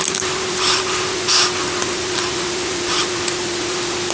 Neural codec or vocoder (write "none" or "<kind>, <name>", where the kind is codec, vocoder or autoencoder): none